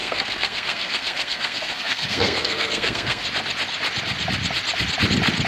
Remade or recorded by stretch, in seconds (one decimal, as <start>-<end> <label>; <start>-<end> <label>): 0.0-3.2 remade; 3.2-5.5 recorded